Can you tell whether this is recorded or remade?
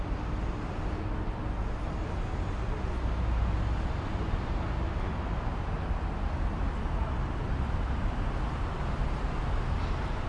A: recorded